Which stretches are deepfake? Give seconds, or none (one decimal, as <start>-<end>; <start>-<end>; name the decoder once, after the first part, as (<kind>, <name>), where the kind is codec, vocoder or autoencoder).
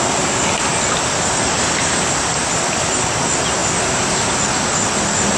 none